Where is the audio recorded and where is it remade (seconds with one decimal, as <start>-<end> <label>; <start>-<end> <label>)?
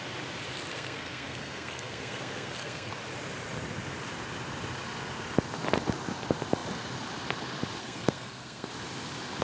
0.0-0.7 recorded; 0.7-2.9 remade; 2.9-7.8 recorded; 7.8-8.7 remade; 8.7-9.4 recorded